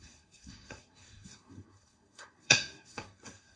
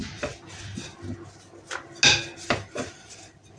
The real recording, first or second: second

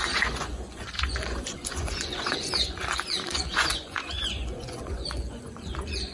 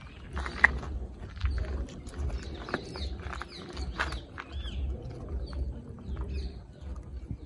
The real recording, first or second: second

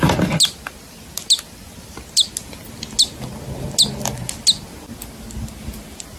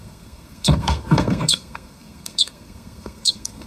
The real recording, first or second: first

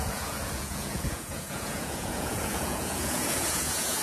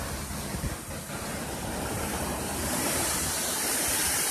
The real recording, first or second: second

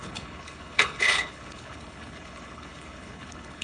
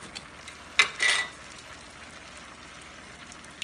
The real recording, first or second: second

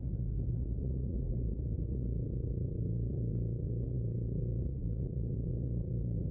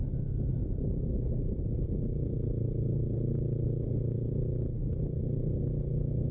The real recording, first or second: second